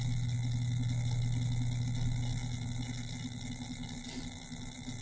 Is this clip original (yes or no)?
yes